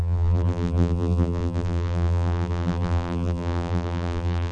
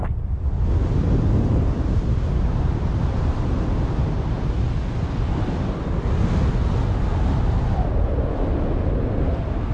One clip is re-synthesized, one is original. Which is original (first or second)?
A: second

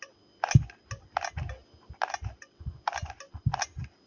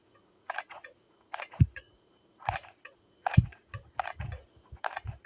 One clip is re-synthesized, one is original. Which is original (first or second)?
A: first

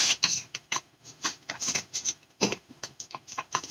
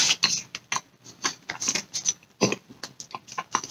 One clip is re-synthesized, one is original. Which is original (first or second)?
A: second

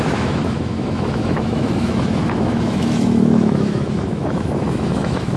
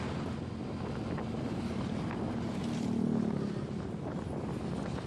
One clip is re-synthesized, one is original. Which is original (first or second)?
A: second